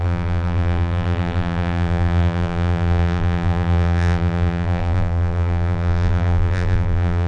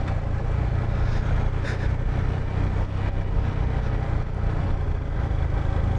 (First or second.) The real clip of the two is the second